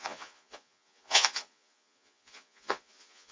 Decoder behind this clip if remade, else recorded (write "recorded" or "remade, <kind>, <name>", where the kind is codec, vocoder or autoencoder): remade, vocoder, Vocos